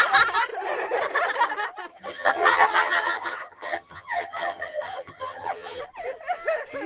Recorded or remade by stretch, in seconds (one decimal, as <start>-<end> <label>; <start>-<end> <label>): 0.0-1.9 recorded; 1.9-5.8 remade; 5.8-6.9 recorded